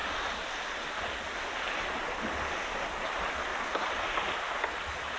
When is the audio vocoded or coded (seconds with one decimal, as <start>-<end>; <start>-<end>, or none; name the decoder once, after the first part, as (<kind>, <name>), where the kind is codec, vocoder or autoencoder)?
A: none